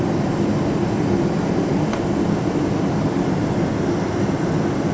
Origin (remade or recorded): recorded